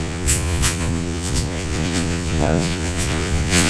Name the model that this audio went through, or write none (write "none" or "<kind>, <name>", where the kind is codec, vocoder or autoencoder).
vocoder, Vocos